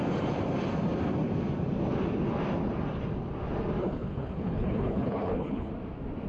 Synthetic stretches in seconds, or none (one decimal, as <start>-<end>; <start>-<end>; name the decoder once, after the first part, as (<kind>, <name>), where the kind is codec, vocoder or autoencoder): 3.8-5.7 (codec, HILCodec)